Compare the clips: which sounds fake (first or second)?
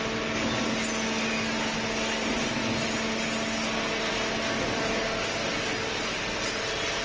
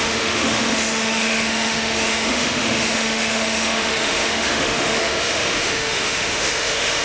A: second